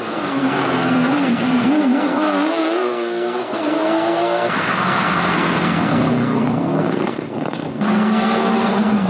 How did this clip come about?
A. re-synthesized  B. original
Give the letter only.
A